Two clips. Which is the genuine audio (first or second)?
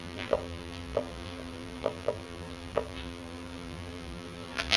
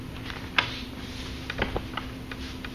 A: second